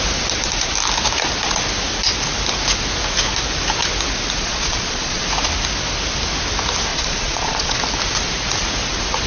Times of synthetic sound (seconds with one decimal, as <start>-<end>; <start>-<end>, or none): 4.4-5.2; 6.9-7.8